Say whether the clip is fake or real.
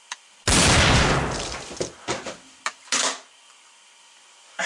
real